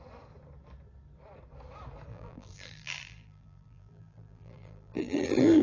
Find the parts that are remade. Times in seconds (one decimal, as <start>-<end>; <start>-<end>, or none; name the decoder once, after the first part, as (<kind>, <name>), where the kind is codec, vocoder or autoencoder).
2.1-5.6 (vocoder, BigVGAN v2)